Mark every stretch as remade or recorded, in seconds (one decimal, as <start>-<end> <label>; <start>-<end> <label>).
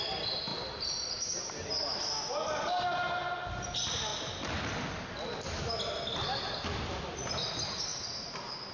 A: 0.0-8.7 recorded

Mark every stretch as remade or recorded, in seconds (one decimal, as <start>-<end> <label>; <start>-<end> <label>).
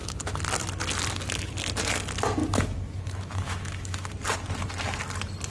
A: 0.0-2.4 recorded; 2.4-4.1 remade; 4.1-5.5 recorded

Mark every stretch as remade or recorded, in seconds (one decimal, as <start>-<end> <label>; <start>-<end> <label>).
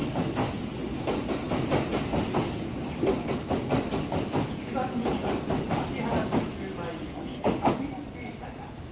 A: 0.0-8.9 recorded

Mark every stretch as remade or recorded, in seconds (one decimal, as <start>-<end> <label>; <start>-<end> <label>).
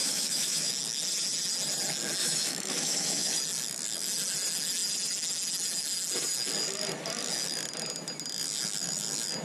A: 0.0-0.7 remade; 0.7-2.2 recorded; 2.2-3.4 remade; 3.4-9.4 recorded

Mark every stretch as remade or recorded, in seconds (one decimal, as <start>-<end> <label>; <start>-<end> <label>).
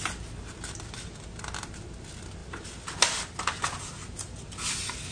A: 0.0-5.1 recorded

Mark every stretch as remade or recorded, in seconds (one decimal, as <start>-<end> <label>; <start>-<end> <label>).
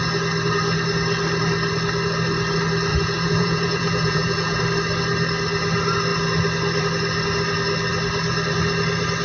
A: 0.0-2.9 recorded; 2.9-4.6 remade; 4.6-9.2 recorded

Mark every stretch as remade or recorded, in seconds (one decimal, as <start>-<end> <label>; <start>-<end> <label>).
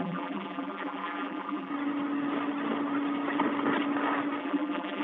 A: 0.0-1.7 remade; 1.7-4.4 recorded; 4.4-5.0 remade